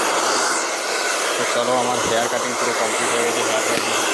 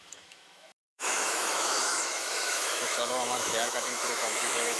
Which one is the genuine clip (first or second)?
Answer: first